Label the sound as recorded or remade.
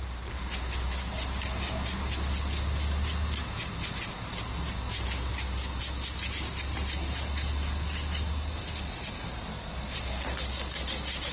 recorded